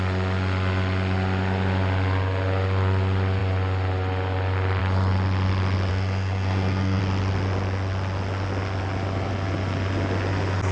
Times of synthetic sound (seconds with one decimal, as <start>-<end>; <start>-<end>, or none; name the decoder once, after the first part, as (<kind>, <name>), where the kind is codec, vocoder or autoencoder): 5.9-7.0 (codec, SNAC)

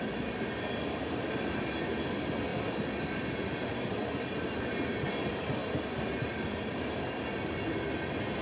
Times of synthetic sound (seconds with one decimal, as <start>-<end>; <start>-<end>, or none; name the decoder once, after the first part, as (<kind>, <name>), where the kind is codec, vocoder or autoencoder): none

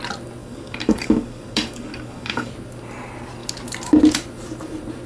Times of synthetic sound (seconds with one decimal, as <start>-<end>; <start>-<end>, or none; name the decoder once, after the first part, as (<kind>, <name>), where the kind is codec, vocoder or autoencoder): 0.4-2.5 (codec, DAC)

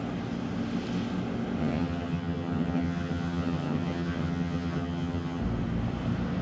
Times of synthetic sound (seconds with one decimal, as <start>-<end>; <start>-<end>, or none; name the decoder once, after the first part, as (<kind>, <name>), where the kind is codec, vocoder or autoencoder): 1.6-5.4 (vocoder, HiFi-GAN)

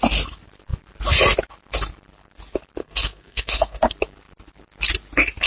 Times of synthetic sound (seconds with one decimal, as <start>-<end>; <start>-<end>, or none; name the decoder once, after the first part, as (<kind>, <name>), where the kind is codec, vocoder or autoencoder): 2.8-3.8 (codec, SNAC)

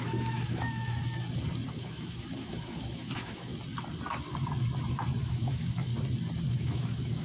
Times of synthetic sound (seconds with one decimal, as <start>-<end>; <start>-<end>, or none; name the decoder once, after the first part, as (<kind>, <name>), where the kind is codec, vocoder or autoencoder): 0.0-1.0 (autoencoder, DAC-VAE); 1.7-3.5; 5.2-5.9; 6.5-7.2

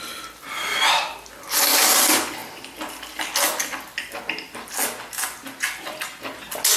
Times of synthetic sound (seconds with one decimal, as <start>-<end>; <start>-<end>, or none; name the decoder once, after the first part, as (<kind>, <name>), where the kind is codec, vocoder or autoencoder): none